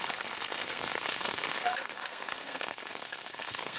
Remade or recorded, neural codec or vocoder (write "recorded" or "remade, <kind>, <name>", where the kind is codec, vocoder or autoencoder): remade, codec, SNAC